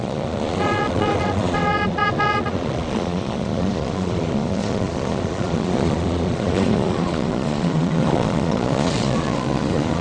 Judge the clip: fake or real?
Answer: fake